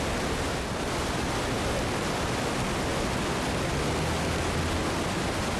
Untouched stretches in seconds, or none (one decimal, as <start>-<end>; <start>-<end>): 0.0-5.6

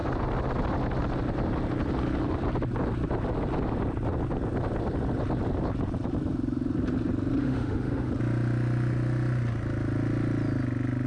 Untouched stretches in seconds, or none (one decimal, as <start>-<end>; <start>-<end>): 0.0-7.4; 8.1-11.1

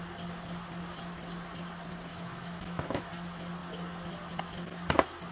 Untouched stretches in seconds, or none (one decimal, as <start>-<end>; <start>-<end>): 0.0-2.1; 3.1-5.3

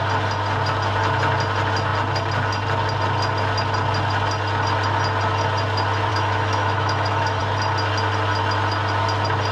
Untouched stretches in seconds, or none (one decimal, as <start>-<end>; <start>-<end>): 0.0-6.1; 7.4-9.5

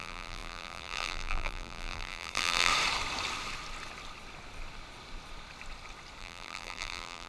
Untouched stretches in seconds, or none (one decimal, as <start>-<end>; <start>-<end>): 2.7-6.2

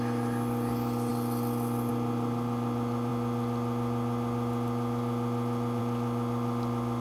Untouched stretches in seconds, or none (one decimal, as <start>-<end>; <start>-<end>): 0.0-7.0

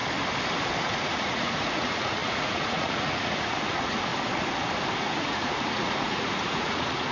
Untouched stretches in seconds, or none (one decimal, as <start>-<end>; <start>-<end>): 0.0-0.8; 4.1-5.0